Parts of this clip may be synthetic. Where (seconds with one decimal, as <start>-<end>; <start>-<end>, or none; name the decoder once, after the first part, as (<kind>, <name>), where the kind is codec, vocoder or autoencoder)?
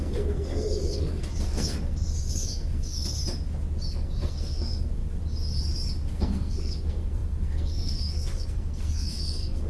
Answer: 0.0-3.2 (codec, SNAC); 3.9-5.0; 6.1-9.7